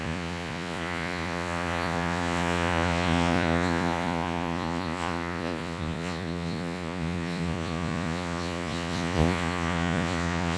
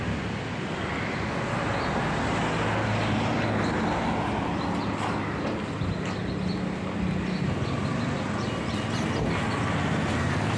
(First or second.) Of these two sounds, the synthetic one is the first